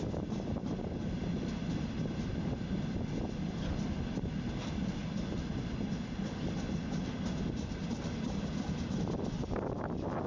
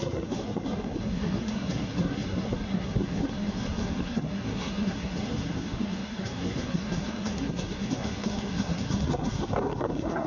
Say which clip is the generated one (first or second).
second